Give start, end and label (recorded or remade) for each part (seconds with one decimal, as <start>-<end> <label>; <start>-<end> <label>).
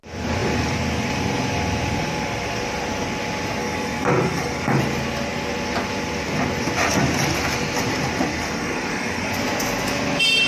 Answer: 0.0-3.6 recorded; 3.6-4.8 remade; 4.8-8.3 recorded; 8.3-9.3 remade; 9.3-10.5 recorded